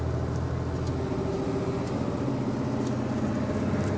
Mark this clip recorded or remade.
recorded